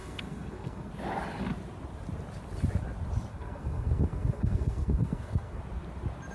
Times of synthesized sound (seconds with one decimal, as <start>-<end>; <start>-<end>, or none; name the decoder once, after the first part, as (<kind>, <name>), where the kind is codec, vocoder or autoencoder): 0.0-0.9 (codec, SNAC); 3.3-5.6